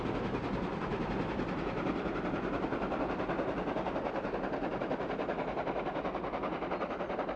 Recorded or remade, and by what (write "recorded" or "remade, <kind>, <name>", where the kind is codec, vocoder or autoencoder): recorded